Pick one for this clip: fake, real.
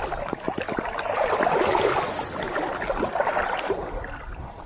real